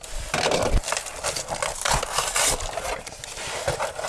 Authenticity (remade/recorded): recorded